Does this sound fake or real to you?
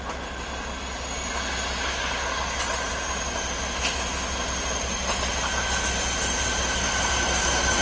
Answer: real